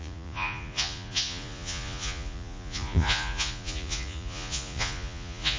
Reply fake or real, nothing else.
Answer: fake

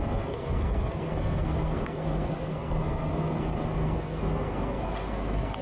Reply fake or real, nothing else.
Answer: fake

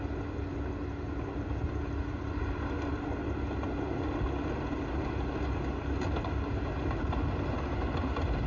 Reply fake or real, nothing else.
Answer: real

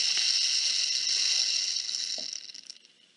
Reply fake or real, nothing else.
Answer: real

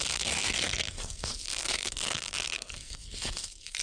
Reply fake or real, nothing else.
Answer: fake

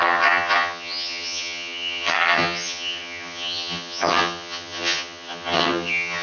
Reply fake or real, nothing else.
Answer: fake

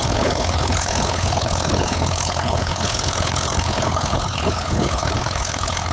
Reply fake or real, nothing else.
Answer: fake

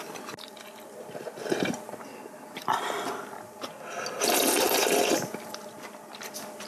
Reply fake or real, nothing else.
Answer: real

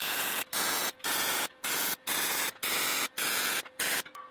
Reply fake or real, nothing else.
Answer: fake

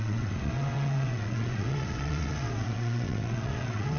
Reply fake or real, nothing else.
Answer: fake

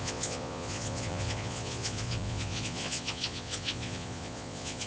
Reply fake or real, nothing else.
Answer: fake